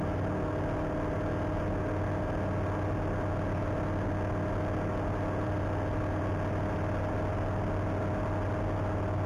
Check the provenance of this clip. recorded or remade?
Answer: recorded